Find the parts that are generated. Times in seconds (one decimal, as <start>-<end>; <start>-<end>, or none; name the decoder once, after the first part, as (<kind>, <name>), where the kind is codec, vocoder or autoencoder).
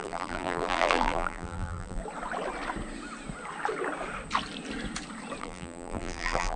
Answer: 0.0-2.0 (vocoder, BigVGAN v2); 5.4-6.6